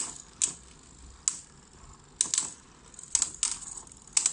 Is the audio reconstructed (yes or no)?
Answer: no